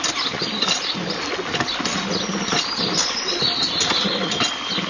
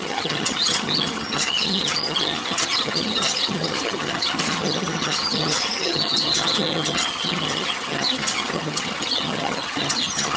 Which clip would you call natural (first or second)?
first